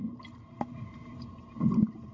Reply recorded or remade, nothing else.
recorded